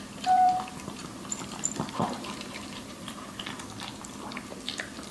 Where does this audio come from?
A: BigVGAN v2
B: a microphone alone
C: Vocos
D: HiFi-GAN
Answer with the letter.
A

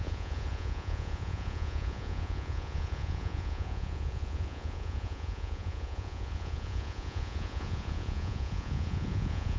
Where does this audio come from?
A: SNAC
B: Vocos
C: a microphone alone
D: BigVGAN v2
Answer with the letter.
B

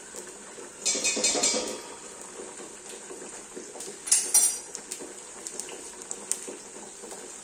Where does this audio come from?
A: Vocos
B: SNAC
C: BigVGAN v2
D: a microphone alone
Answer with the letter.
D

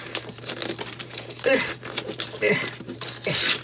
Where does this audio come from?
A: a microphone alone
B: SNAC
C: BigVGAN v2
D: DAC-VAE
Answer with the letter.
C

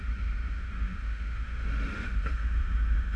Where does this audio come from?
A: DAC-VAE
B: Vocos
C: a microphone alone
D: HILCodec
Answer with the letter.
A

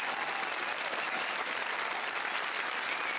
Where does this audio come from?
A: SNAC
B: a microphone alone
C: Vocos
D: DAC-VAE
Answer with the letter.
B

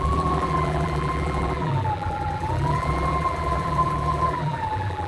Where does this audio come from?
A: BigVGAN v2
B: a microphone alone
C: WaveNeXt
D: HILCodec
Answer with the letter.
A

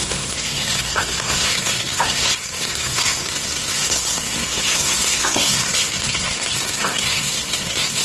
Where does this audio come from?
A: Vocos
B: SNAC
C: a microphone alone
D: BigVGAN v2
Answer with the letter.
B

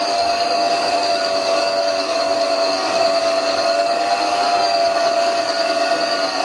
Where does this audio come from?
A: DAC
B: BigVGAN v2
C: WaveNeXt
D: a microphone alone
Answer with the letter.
A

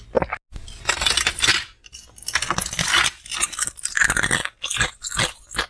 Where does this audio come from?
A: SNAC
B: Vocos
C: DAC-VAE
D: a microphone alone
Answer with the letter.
D